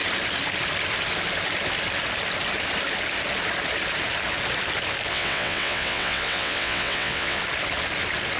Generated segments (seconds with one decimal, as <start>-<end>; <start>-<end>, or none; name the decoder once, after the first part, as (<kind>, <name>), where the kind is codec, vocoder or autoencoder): 5.1-7.4 (vocoder, WaveNeXt)